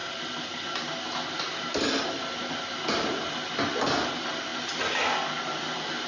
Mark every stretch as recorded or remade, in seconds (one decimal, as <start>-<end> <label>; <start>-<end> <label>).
0.0-6.1 recorded